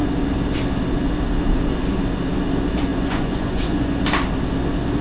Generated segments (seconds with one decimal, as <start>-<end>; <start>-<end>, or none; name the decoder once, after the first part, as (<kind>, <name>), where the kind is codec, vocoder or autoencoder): 2.9-4.0 (vocoder, Vocos)